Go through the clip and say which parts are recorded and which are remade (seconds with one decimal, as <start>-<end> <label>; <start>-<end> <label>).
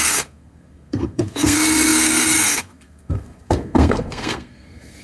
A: 0.0-5.0 remade